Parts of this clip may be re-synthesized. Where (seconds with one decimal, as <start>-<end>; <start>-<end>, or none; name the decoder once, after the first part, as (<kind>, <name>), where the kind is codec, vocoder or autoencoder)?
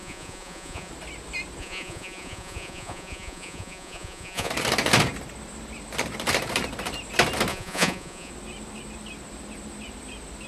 0.0-0.9 (vocoder, Vocos); 1.6-4.5; 7.5-8.3